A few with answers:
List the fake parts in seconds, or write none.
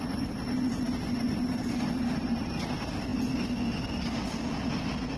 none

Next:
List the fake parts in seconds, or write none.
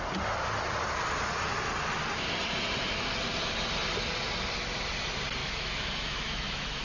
5.4-6.8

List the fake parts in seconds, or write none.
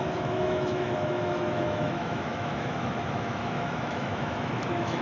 0.0-5.0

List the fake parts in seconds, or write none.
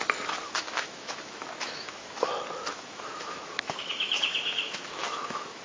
0.4-2.3; 2.7-5.6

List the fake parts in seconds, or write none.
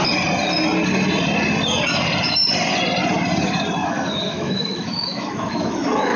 3.8-6.2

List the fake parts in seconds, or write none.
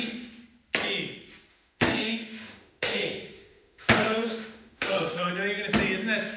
1.5-5.3